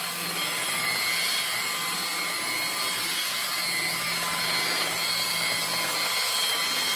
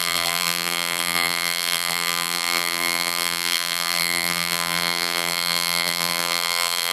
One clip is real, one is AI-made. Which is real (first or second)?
first